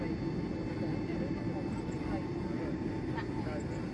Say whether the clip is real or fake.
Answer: real